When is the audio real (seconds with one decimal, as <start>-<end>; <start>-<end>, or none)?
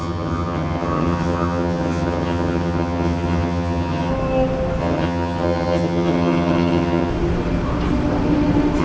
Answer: 4.1-4.8; 7.1-8.8